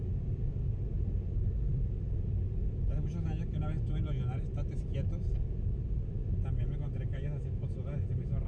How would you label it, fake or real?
real